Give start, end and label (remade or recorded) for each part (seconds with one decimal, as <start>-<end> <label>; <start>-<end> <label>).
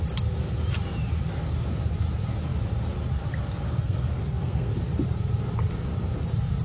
0.0-3.8 recorded; 3.8-4.7 remade; 4.7-6.6 recorded